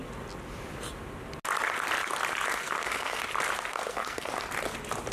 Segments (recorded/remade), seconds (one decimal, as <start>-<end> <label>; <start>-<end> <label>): 0.0-2.6 recorded; 2.6-3.2 remade; 3.2-3.7 recorded; 3.7-4.3 remade; 4.3-5.1 recorded